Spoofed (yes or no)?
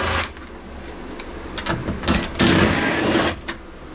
no